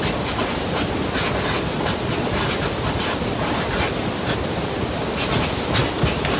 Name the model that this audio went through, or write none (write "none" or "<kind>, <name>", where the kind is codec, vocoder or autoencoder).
none